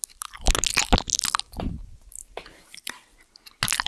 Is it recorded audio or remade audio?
recorded